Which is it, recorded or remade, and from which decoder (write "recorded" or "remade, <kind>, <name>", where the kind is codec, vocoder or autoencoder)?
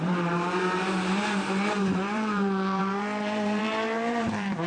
remade, vocoder, BigVGAN v2